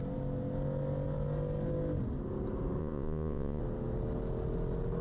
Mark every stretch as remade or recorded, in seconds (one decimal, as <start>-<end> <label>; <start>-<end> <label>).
0.0-2.8 recorded; 2.8-3.6 remade; 3.6-5.0 recorded